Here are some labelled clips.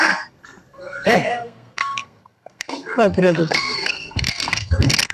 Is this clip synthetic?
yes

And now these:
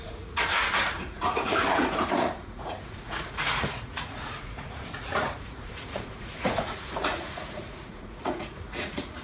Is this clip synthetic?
yes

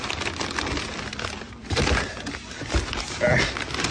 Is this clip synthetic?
no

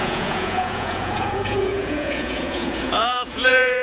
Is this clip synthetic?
yes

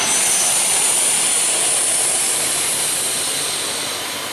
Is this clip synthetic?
no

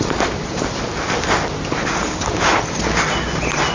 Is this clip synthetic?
no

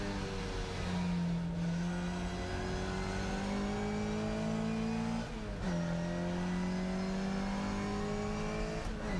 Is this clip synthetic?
no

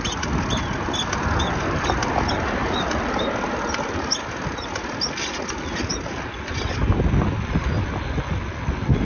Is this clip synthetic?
no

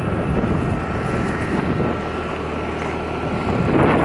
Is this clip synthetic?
no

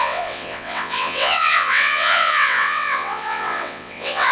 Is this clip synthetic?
yes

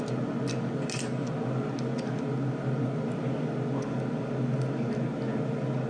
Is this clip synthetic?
no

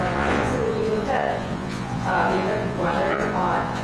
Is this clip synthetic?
yes